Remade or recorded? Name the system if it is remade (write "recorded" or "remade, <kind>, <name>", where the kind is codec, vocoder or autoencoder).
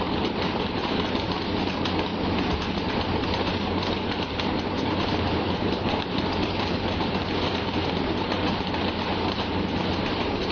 remade, vocoder, BigVGAN v2